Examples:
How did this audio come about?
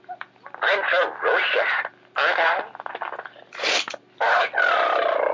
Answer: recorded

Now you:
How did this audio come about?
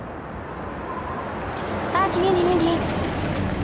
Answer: recorded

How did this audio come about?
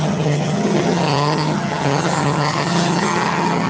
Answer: remade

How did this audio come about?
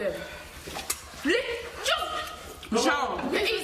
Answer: recorded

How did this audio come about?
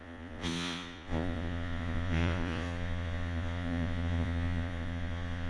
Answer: remade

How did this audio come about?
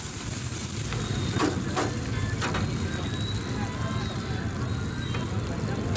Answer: recorded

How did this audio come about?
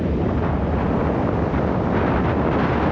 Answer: recorded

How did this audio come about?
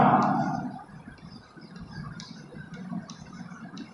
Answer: recorded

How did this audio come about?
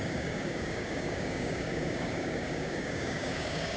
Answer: remade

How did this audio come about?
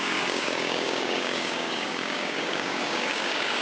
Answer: remade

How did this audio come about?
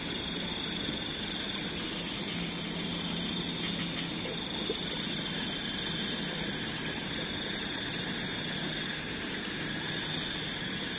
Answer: recorded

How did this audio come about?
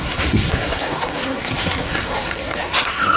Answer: remade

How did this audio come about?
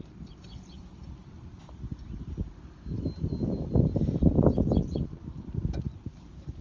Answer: recorded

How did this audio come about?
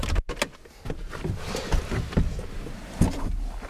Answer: recorded